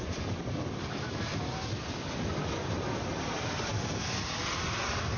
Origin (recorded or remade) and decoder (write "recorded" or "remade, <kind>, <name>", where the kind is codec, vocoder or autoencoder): recorded